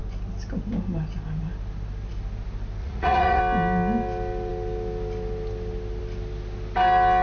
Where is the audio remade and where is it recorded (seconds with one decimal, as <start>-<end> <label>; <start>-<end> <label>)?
0.0-2.8 recorded; 2.8-3.4 remade; 3.4-7.2 recorded